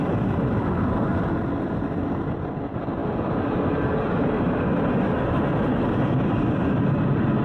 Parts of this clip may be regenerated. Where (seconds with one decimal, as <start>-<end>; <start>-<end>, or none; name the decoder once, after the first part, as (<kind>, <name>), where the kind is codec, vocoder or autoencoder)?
0.0-3.0 (vocoder, BigVGAN v2); 3.7-4.7; 6.5-7.4